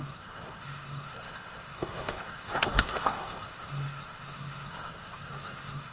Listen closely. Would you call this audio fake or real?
fake